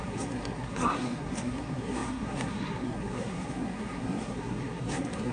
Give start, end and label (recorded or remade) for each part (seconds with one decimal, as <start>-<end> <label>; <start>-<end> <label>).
0.0-5.3 remade